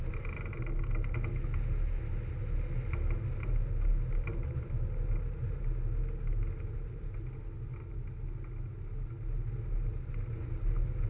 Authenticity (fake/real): real